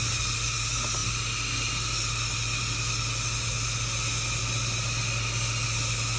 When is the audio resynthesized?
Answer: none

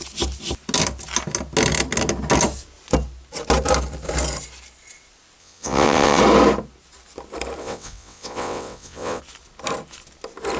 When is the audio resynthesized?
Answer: 5.4-6.2 (vocoder, WaveNeXt); 7.6-9.2